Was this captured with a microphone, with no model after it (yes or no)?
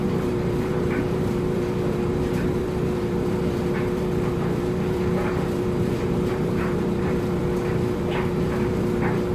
no